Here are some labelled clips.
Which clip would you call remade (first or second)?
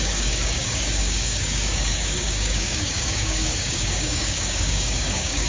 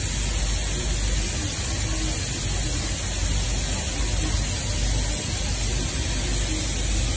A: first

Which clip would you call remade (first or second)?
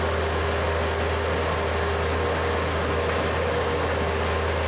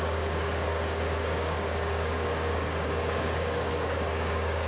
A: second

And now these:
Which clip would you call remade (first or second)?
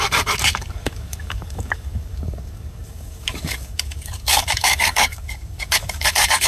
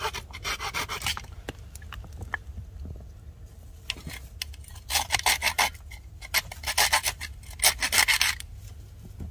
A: first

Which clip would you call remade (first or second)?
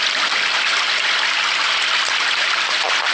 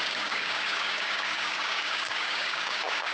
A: second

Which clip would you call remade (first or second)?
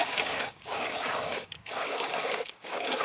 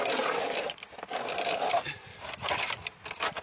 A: first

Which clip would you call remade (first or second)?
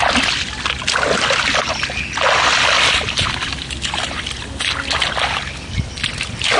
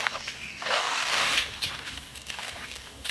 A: second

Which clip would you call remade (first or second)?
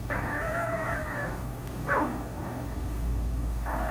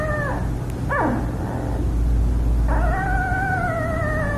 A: first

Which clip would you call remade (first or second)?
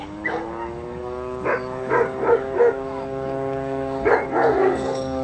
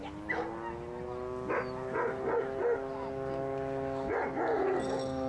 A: first